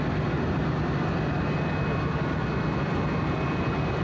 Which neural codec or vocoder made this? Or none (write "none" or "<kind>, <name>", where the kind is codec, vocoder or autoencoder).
none